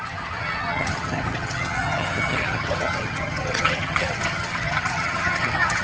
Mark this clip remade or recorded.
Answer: remade